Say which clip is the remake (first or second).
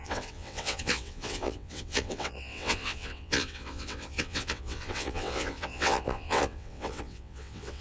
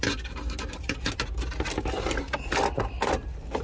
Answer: first